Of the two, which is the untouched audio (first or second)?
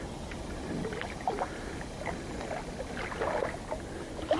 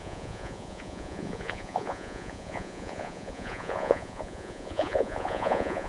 first